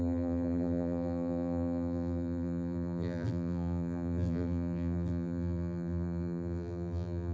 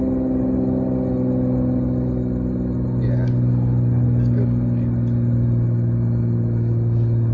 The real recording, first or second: second